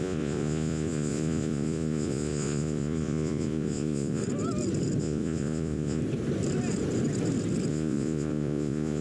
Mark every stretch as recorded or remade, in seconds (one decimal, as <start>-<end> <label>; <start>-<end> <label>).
0.0-4.2 remade; 4.2-5.0 recorded; 5.0-6.0 remade; 6.0-7.7 recorded; 7.7-9.0 remade

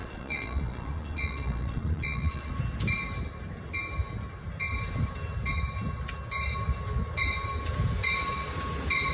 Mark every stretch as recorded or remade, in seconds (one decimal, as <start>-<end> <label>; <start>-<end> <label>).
0.0-2.5 remade; 2.5-9.1 recorded

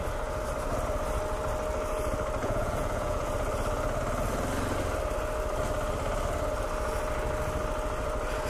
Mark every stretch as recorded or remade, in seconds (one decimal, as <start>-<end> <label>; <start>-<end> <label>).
0.0-2.4 recorded; 2.4-3.3 remade; 3.3-8.5 recorded

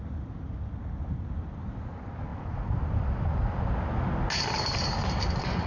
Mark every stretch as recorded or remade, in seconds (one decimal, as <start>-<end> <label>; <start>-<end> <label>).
0.0-5.7 recorded

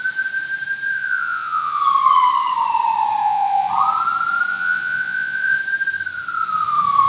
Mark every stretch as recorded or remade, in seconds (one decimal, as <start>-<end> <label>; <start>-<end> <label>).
0.0-0.9 recorded; 0.9-1.8 remade; 1.8-3.2 recorded; 3.2-3.7 remade; 3.7-4.5 recorded; 4.5-5.6 remade; 5.6-7.1 recorded

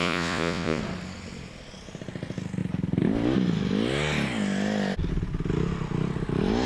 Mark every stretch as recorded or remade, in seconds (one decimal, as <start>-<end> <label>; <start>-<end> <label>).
0.0-0.8 remade; 0.8-6.7 recorded

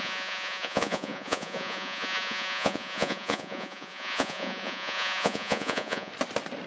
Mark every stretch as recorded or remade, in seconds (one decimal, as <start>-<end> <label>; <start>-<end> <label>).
0.0-6.1 remade; 6.1-6.7 recorded